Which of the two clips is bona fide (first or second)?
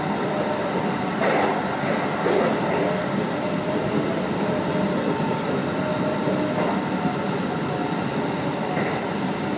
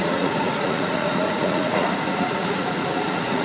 first